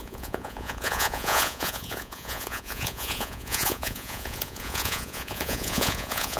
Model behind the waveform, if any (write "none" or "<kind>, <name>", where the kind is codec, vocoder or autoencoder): vocoder, Vocos